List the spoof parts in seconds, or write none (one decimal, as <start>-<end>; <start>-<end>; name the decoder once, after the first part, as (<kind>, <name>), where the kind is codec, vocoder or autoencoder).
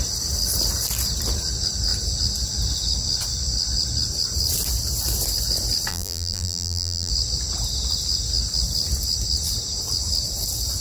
5.9-7.1 (vocoder, BigVGAN v2)